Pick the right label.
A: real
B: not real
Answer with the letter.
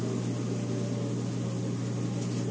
A